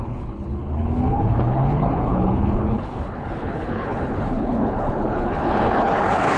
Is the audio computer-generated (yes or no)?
yes